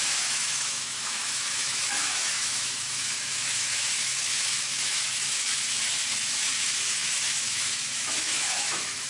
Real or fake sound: fake